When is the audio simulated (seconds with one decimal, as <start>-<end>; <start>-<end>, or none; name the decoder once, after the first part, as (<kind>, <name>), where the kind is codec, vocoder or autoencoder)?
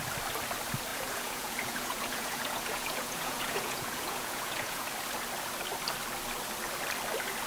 0.9-4.9 (vocoder, Vocos)